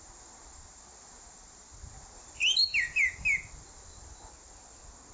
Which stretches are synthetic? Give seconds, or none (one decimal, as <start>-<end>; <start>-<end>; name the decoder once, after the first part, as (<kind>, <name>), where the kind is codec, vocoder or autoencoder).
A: none